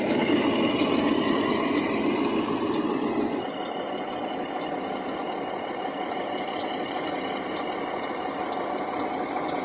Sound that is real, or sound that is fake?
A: real